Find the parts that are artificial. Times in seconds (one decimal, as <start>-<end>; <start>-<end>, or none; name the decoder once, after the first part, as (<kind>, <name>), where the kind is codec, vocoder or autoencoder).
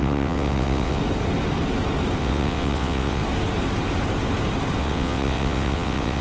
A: 0.0-1.0 (vocoder, WaveNeXt); 2.2-3.2; 4.8-6.2